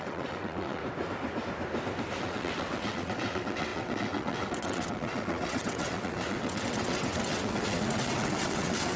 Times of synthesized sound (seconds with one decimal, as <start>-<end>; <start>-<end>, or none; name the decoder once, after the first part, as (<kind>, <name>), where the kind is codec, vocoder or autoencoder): 0.0-0.8 (vocoder, WaveNeXt); 2.2-9.0